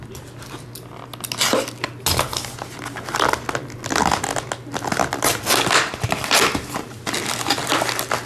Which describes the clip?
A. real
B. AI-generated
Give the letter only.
A